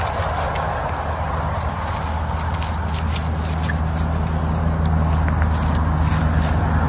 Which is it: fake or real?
real